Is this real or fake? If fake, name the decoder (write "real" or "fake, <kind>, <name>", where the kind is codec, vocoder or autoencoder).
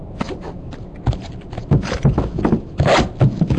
real